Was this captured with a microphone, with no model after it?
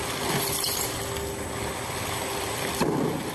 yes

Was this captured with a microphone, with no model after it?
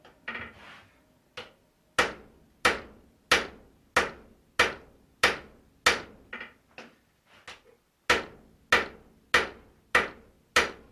yes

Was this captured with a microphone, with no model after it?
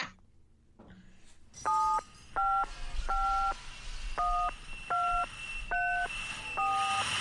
yes